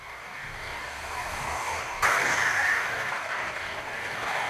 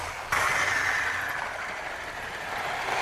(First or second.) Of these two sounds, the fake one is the first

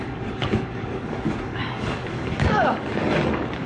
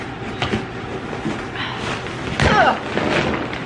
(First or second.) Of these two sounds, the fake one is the first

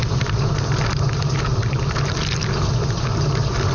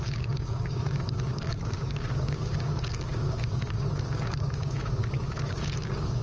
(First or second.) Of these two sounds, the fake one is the second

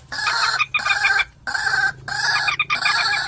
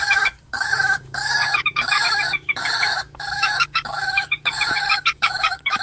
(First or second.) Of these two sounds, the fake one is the second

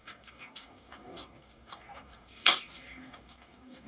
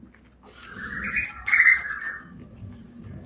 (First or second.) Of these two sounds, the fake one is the first